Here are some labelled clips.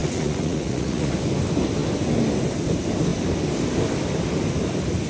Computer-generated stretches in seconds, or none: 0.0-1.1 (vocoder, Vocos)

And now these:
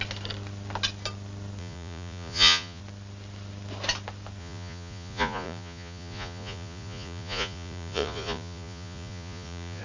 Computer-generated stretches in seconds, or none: 1.6-2.8 (vocoder, Vocos); 4.4-9.8